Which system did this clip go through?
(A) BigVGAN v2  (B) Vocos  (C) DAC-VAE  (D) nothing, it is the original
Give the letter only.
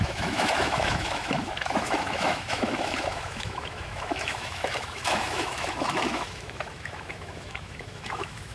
C